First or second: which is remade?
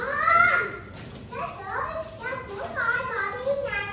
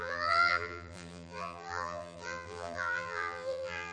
second